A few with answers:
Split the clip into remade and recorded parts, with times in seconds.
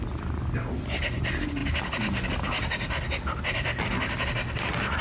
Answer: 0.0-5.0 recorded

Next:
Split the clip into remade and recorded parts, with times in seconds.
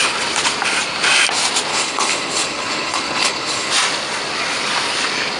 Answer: 0.0-1.7 recorded; 1.7-3.7 remade; 3.7-5.4 recorded